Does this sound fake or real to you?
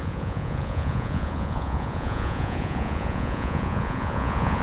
fake